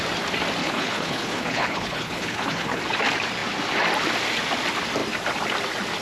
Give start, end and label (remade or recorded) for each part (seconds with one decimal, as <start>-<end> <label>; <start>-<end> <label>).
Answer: 0.0-0.6 recorded; 0.6-2.8 remade; 2.8-6.0 recorded